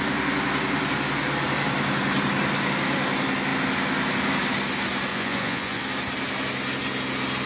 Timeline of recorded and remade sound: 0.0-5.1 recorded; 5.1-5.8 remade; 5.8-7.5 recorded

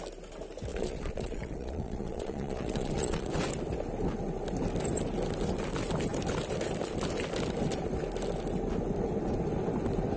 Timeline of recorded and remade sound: 0.0-0.7 recorded; 0.7-3.3 remade; 3.3-10.2 recorded

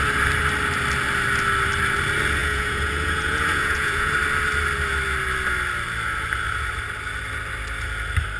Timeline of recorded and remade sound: 0.0-2.4 recorded; 2.4-4.1 remade; 4.1-8.4 recorded

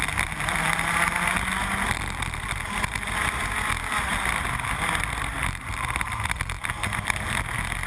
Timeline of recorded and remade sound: 0.0-7.9 recorded

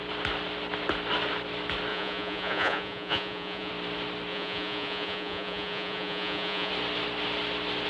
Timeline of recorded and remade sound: 0.0-1.9 recorded; 1.9-3.7 remade; 3.7-4.3 recorded; 4.3-6.7 remade; 6.7-7.9 recorded

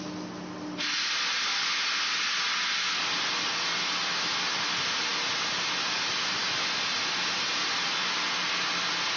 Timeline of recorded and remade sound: 0.0-9.2 recorded